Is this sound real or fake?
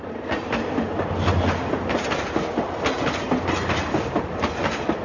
real